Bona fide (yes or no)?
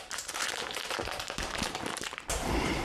no